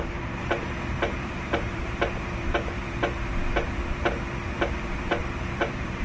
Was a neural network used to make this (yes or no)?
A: yes